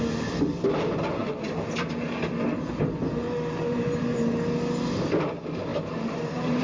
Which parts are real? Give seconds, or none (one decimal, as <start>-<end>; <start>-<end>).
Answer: 0.0-3.7; 4.4-5.7